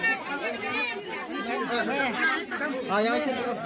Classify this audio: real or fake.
real